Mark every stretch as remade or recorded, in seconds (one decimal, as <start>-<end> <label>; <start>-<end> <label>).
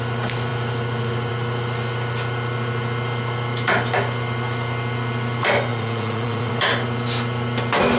0.0-5.7 recorded; 5.7-6.5 remade; 6.5-8.0 recorded